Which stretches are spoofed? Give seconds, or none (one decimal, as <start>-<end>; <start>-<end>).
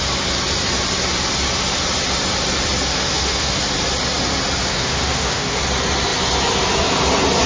2.9-3.6; 4.7-5.6